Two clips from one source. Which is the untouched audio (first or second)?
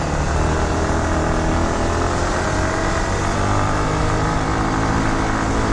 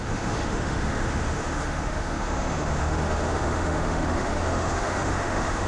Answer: first